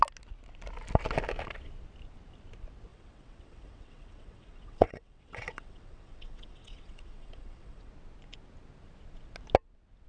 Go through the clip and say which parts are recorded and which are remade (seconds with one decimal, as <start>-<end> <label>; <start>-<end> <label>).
0.0-2.9 recorded; 2.9-7.9 remade; 7.9-10.1 recorded